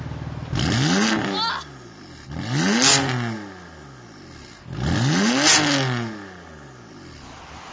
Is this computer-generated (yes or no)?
no